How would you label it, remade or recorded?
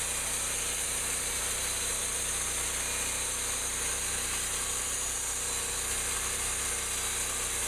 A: recorded